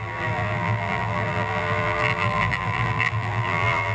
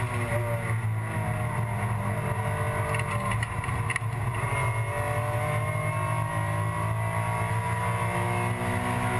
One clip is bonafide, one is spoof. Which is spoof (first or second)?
first